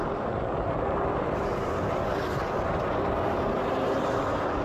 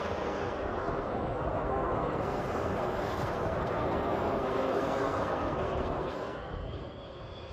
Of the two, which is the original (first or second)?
first